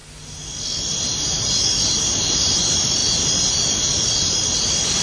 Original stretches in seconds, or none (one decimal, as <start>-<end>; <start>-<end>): 0.0-5.0